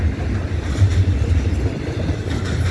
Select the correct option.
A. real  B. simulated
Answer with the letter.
A